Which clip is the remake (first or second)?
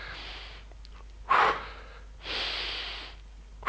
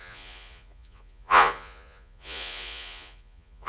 second